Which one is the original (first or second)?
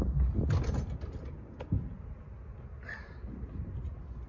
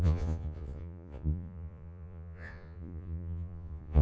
first